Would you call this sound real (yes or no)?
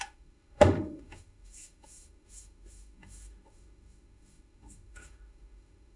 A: no